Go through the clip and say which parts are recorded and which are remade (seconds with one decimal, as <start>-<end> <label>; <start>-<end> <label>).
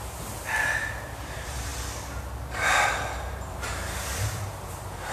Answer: 0.0-1.7 remade; 1.7-3.3 recorded; 3.3-5.1 remade